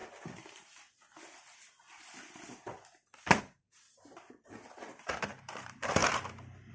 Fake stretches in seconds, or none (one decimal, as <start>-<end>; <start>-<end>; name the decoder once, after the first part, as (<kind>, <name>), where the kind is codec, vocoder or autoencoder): 3.4-6.0 (vocoder, BigVGAN v2)